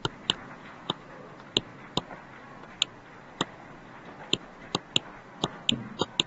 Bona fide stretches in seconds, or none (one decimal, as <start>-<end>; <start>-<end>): 0.0-0.4; 1.0-6.3